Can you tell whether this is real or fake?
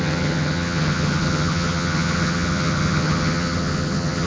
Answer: fake